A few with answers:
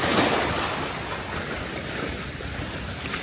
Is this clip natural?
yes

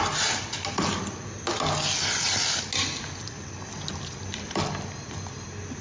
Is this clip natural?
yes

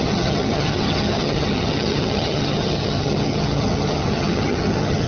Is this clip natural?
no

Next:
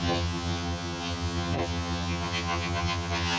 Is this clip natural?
no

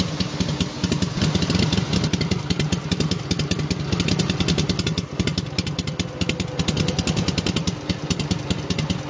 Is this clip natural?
yes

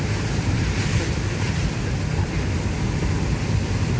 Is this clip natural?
yes